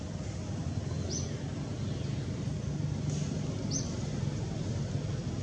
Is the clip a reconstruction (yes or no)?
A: no